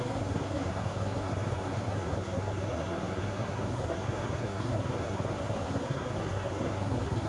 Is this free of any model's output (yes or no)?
no